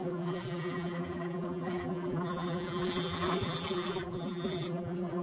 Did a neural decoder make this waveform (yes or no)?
yes